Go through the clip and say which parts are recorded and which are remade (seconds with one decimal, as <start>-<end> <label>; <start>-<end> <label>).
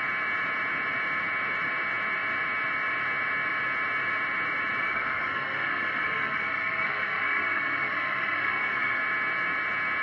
0.0-4.8 recorded; 4.8-9.0 remade; 9.0-10.0 recorded